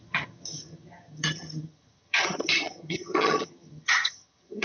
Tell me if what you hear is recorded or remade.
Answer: remade